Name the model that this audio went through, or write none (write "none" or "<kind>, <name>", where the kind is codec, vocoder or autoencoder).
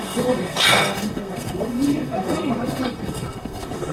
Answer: codec, SNAC